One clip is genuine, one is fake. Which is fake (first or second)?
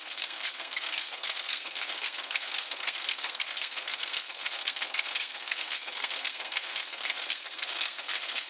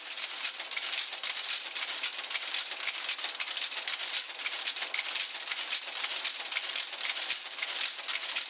first